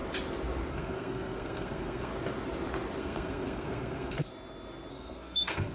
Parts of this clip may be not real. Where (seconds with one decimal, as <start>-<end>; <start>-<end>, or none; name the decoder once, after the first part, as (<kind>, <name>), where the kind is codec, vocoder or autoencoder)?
0.7-2.1 (codec, SNAC); 3.0-4.3; 4.9-5.7